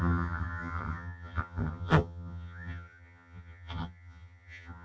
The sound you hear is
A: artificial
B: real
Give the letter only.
A